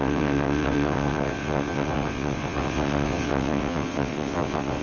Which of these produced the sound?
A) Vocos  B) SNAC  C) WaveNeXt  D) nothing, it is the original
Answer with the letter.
C